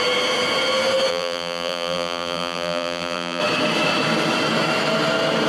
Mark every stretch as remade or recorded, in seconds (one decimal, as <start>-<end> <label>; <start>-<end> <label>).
0.0-1.1 recorded; 1.1-3.4 remade; 3.4-5.5 recorded